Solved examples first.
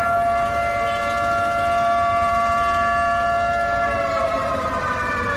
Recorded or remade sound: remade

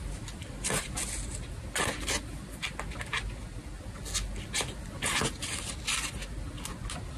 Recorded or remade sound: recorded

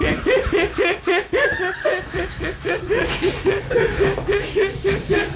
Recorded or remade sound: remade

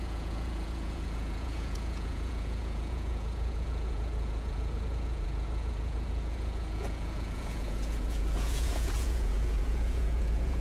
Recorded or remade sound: remade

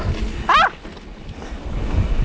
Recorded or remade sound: recorded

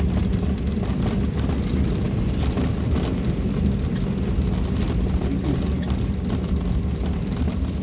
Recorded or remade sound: recorded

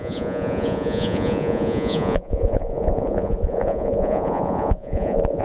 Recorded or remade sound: remade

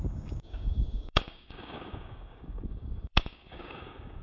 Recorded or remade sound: remade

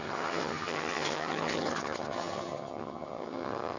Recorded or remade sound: remade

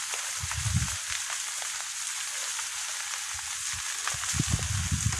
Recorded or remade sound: recorded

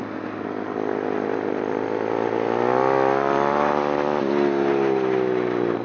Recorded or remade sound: recorded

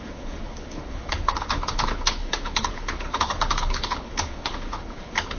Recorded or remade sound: remade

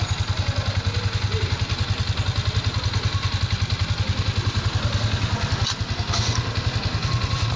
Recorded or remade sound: recorded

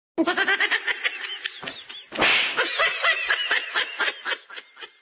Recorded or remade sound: recorded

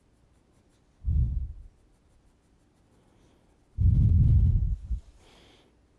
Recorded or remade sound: recorded